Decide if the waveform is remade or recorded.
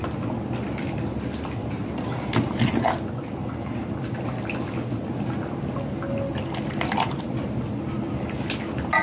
recorded